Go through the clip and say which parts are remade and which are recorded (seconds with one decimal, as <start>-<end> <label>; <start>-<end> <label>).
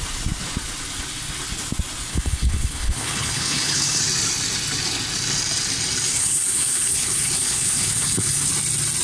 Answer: 0.0-2.1 recorded; 2.1-4.0 remade; 4.0-6.1 recorded; 6.1-8.5 remade; 8.5-9.0 recorded